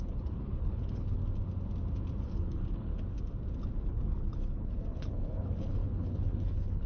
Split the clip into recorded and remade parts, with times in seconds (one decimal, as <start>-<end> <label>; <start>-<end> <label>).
0.0-1.2 remade; 1.2-2.2 recorded; 2.2-2.9 remade; 2.9-3.8 recorded; 3.8-6.9 remade